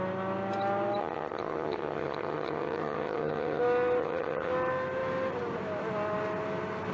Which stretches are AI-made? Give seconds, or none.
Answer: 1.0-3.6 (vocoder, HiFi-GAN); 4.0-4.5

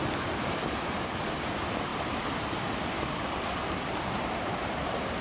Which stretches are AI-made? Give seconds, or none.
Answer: none

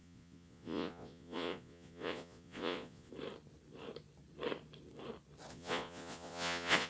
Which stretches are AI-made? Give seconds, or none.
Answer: 0.0-3.1 (vocoder, Vocos); 5.5-6.9

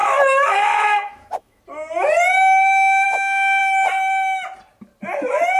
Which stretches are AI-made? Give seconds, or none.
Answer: 0.0-1.6 (autoencoder, DAC-VAE)

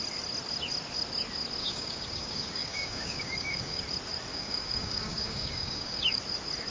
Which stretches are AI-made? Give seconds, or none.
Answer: 1.6-3.8 (codec, DAC); 4.3-6.2

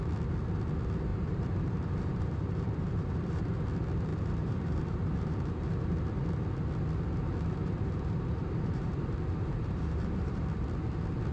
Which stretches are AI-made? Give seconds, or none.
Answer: 1.1-3.6 (vocoder, BigVGAN v2); 4.1-6.0; 7.6-10.4